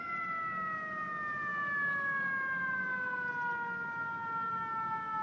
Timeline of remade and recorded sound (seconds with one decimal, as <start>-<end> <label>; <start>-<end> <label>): 0.0-5.2 recorded